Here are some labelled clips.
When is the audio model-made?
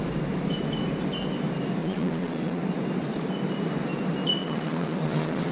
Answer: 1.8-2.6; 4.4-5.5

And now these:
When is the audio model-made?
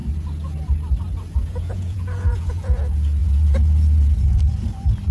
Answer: 1.4-2.8; 3.2-4.4